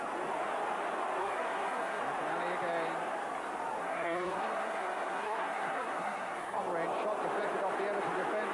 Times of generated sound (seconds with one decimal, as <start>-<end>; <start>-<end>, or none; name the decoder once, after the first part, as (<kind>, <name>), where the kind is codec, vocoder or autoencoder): 1.2-2.0 (codec, SNAC); 3.8-6.6